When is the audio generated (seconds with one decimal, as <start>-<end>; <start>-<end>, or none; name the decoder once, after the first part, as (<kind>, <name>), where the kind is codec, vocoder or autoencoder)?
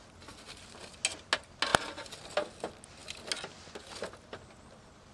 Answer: none